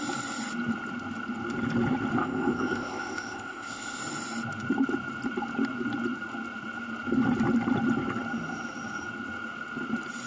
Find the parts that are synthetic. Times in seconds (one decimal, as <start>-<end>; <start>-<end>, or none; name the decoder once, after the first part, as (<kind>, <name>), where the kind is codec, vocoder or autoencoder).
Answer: 2.2-4.0 (codec, ZipCodec)